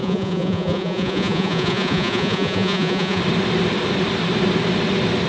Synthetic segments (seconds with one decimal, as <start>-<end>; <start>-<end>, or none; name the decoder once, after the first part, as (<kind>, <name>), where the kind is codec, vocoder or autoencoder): 0.0-3.2 (vocoder, Vocos)